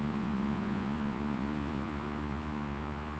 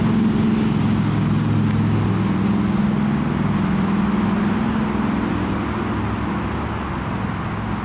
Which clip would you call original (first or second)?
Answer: second